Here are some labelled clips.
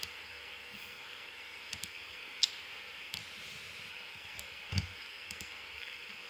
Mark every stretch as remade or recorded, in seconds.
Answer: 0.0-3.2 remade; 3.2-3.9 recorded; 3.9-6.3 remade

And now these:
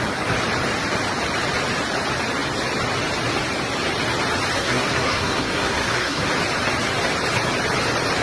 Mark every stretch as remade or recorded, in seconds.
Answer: 0.0-4.6 recorded; 4.6-6.3 remade; 6.3-8.2 recorded

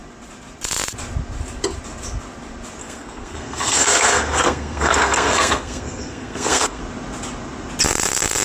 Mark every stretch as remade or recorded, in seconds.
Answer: 0.0-2.8 recorded; 2.8-6.8 remade; 6.8-8.4 recorded

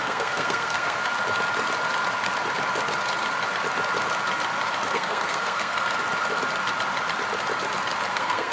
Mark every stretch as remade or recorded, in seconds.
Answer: 0.0-1.0 remade; 1.0-4.9 recorded; 4.9-6.0 remade; 6.0-8.1 recorded; 8.1-8.5 remade

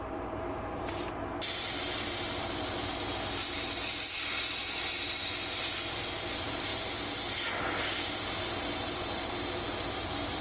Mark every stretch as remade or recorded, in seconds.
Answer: 0.0-10.4 recorded

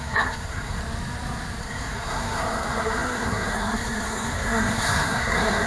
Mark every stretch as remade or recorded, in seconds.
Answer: 0.0-0.8 remade; 0.8-1.6 recorded; 1.6-5.7 remade

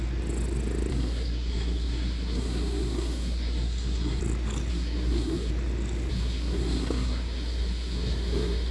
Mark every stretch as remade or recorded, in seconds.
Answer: 0.0-0.9 recorded; 0.9-4.2 remade; 4.2-4.7 recorded; 4.7-5.5 remade; 5.5-6.1 recorded; 6.1-8.7 remade